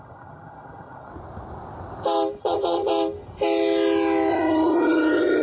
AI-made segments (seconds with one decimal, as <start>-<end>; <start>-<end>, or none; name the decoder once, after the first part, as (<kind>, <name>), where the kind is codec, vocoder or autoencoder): 0.0-1.1 (vocoder, HiFi-GAN); 2.4-2.9; 4.3-5.4